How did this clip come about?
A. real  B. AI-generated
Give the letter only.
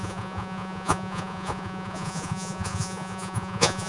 B